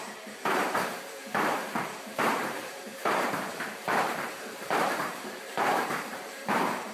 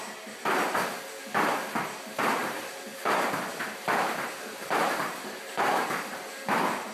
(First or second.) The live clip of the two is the second